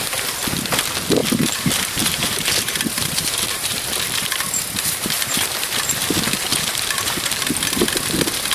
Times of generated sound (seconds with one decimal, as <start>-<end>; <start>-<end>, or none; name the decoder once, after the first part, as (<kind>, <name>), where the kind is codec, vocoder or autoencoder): 1.2-5.3 (vocoder, BigVGAN v2); 6.5-7.9